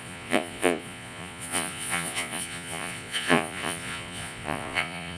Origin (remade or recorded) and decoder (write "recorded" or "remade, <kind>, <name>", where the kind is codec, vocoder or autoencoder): remade, vocoder, Vocos